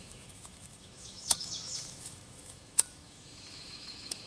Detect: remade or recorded remade